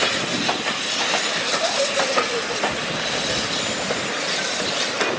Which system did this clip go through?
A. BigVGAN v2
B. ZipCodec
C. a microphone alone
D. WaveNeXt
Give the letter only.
C